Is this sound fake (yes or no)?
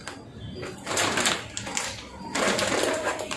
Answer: no